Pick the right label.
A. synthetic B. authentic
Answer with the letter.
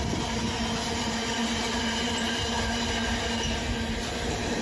B